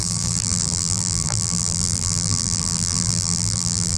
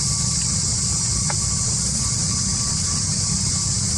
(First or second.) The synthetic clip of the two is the first